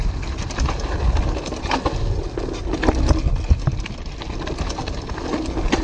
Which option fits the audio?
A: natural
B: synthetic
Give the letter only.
A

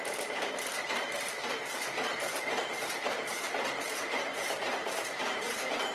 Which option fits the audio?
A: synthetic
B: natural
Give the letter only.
A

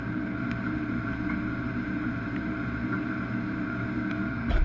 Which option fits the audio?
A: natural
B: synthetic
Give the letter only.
B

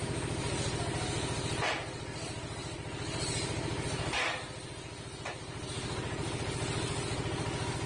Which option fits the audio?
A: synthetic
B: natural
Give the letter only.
B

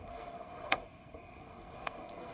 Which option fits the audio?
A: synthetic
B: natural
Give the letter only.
A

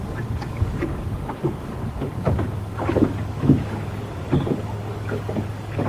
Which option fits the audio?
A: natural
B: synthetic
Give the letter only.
B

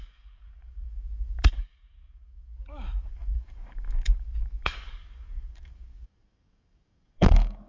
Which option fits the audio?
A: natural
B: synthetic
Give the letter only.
B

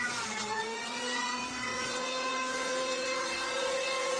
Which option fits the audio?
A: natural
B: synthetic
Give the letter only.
B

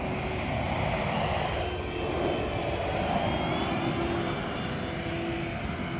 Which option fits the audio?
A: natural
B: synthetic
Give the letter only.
A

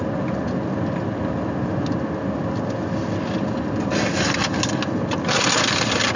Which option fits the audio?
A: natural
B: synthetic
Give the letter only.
A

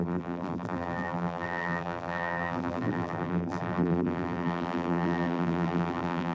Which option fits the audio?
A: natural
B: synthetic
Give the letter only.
B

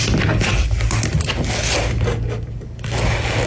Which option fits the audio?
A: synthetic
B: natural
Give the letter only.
B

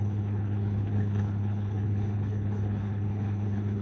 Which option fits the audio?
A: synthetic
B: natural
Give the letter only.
A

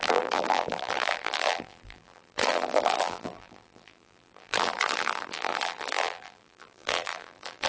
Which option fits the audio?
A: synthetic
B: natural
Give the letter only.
A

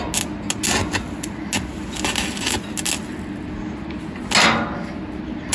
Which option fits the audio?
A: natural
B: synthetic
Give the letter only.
A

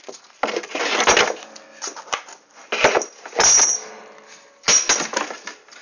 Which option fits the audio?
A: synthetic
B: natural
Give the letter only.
B